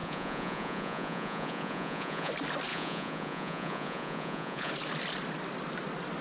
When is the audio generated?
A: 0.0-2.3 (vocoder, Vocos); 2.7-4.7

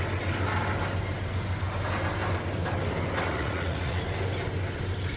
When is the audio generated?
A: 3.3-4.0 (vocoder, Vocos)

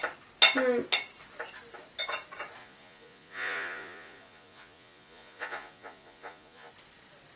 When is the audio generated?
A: 2.6-6.7 (vocoder, Vocos)